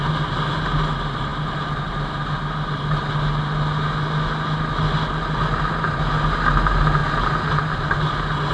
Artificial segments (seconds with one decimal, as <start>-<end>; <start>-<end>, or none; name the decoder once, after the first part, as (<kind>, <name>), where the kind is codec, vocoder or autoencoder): none